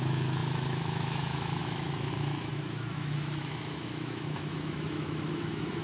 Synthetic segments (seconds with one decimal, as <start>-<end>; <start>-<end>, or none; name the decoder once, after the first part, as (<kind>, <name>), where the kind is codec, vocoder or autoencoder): 0.0-5.8 (autoencoder, DAC-VAE)